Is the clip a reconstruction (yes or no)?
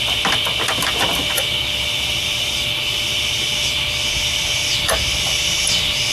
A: no